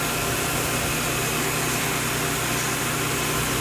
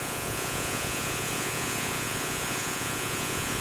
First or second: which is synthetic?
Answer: second